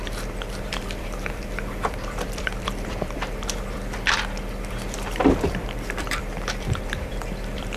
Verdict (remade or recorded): remade